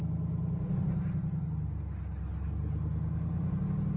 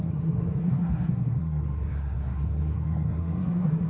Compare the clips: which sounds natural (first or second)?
first